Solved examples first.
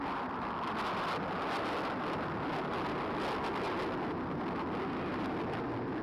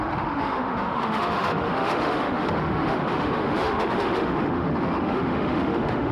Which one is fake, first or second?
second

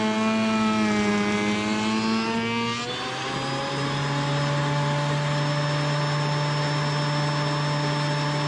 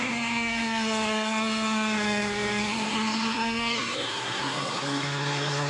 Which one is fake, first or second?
second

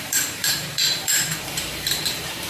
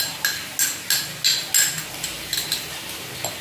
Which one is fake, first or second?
first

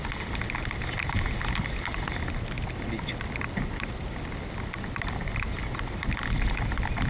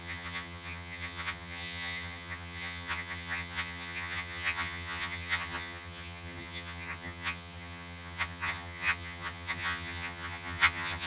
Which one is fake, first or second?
second